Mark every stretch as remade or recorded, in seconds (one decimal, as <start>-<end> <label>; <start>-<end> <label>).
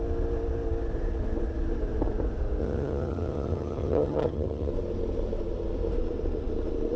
0.0-2.6 recorded; 2.6-4.7 remade; 4.7-7.0 recorded